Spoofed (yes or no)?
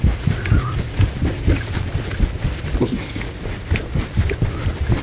no